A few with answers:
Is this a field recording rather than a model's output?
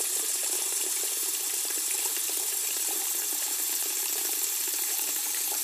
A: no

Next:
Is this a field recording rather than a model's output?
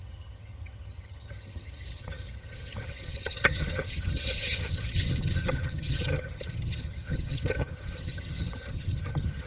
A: no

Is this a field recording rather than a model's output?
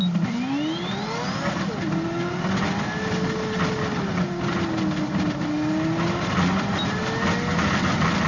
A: yes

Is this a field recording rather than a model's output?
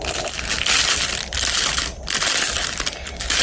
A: yes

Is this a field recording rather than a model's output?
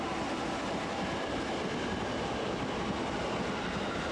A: yes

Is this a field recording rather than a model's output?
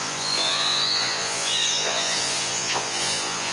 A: no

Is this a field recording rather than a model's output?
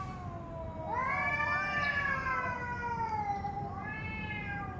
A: yes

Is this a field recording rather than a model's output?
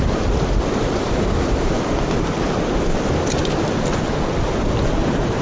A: yes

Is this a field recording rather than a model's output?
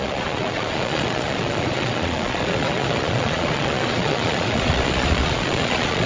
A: no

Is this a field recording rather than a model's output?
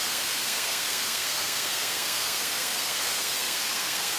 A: no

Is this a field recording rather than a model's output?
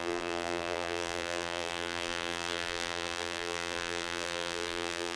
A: no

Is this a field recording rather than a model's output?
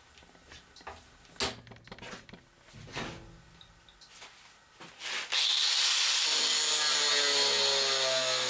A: yes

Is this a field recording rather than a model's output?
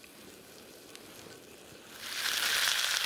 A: yes